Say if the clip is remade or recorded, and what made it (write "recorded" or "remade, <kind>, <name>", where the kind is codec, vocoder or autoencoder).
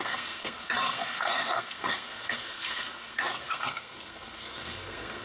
remade, codec, SNAC